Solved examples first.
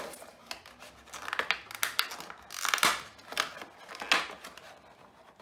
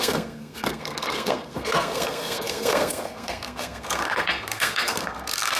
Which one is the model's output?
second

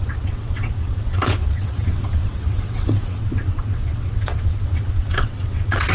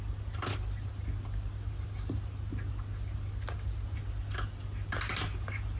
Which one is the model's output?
first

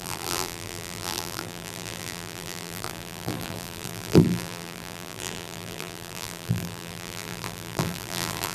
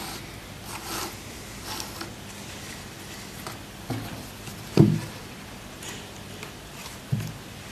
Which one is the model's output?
first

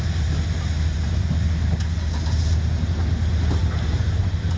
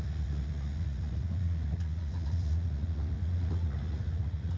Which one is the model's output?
second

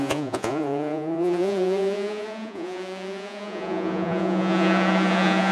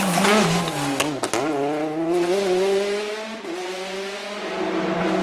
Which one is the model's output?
first